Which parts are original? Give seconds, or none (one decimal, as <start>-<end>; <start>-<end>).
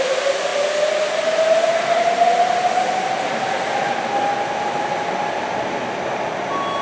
0.0-6.8